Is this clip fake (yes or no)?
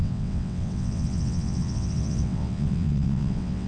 yes